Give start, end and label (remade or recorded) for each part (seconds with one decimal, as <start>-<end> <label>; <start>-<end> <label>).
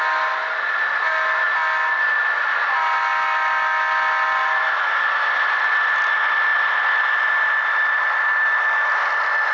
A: 0.0-9.5 recorded